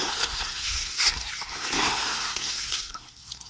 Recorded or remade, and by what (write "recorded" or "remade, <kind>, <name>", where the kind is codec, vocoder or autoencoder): remade, codec, SNAC